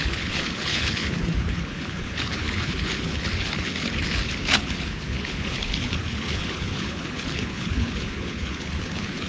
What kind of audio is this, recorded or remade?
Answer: remade